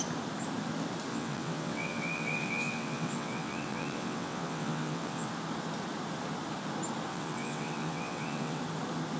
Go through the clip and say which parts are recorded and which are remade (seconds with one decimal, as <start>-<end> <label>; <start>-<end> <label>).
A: 0.0-1.1 recorded; 1.1-5.3 remade; 5.3-7.1 recorded; 7.1-8.6 remade; 8.6-9.2 recorded